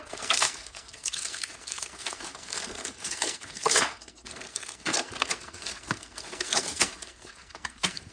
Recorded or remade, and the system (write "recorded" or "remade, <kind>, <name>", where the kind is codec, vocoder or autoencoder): remade, codec, SNAC